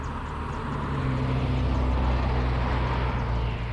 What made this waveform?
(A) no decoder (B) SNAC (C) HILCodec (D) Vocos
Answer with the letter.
A